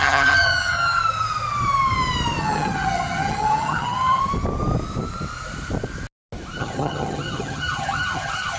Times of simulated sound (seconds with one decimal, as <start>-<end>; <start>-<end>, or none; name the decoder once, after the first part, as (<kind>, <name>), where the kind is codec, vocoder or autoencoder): 0.0-1.0 (vocoder, HiFi-GAN); 2.4-4.2; 6.6-8.6